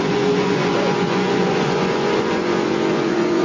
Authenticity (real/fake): fake